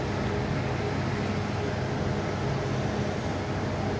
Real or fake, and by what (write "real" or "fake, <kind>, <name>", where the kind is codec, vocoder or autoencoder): real